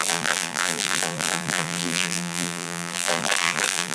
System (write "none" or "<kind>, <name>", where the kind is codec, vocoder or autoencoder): vocoder, BigVGAN v2